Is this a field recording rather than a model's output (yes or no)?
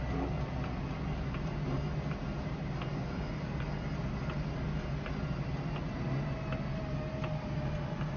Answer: yes